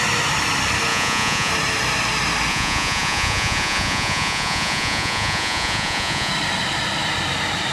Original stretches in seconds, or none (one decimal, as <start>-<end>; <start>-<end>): 0.0-0.9; 1.5-2.5; 6.3-7.7